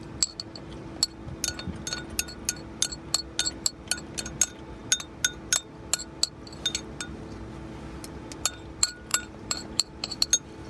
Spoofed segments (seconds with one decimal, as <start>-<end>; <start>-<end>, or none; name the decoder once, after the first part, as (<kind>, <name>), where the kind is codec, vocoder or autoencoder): 9.1-10.2 (vocoder, BigVGAN v2)